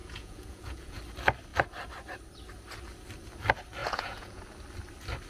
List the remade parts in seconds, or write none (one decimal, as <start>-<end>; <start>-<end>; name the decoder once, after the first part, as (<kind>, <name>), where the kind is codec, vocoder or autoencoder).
0.0-1.0 (vocoder, Vocos); 3.8-4.4